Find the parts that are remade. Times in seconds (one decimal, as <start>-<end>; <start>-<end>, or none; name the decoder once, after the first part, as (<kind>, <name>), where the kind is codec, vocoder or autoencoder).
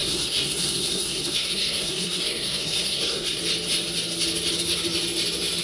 0.0-3.4 (codec, SNAC)